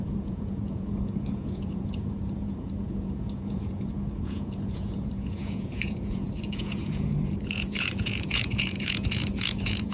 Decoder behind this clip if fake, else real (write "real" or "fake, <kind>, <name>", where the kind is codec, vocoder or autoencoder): fake, vocoder, Vocos